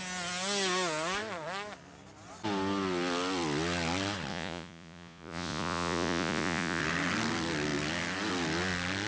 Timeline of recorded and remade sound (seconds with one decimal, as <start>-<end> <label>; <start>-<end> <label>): 0.0-4.3 recorded; 4.3-6.8 remade; 6.8-9.1 recorded